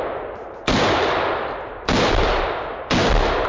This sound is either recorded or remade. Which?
recorded